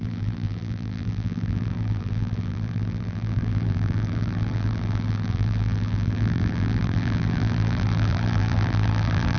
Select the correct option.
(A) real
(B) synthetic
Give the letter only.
B